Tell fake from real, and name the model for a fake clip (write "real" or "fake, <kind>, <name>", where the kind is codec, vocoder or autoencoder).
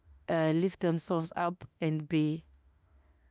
fake, autoencoder, DAC-VAE